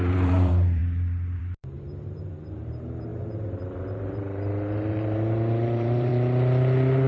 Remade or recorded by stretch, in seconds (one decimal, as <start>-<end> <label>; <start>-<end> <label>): 0.0-0.8 remade; 0.8-1.4 recorded; 1.4-6.1 remade; 6.1-7.1 recorded